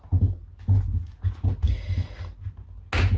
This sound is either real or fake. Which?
real